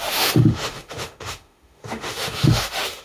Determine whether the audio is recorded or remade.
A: remade